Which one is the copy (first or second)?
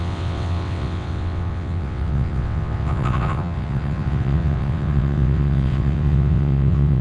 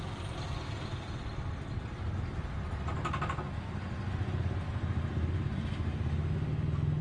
first